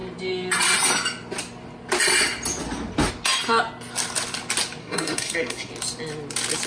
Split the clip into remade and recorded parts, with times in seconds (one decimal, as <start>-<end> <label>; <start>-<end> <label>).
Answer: 0.0-4.8 recorded; 4.8-5.7 remade; 5.7-6.7 recorded